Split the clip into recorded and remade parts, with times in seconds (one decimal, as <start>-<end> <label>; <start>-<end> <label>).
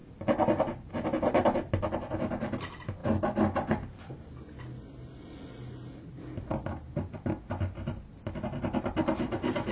0.0-9.7 recorded